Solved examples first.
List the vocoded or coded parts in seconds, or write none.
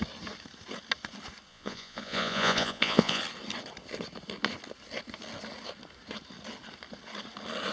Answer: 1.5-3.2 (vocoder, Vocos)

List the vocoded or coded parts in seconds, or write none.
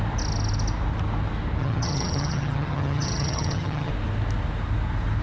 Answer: 1.6-3.9 (vocoder, HiFi-GAN)